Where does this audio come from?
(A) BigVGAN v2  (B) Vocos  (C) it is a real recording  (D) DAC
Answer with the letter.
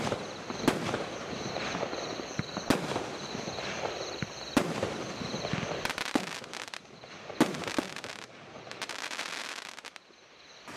C